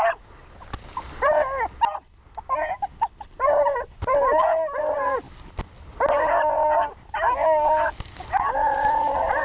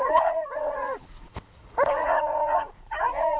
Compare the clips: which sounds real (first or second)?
first